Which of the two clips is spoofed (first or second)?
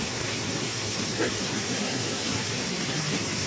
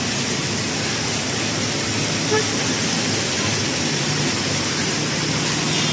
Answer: first